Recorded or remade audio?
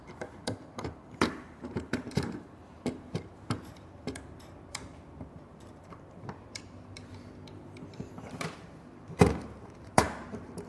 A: remade